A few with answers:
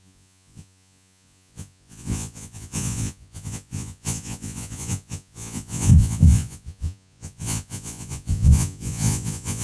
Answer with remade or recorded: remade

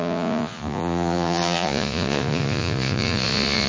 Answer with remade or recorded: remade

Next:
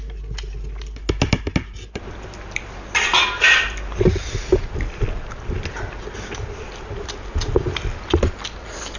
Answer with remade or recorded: recorded